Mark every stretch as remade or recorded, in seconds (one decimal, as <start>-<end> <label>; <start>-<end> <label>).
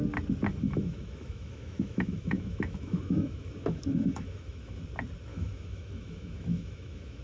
0.0-0.5 recorded; 0.5-4.8 remade; 4.8-5.3 recorded; 5.3-7.2 remade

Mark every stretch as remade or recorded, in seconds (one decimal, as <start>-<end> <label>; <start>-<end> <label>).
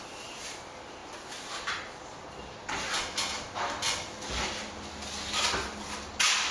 0.0-6.5 recorded